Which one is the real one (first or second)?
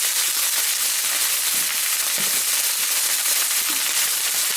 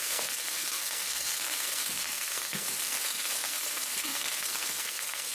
first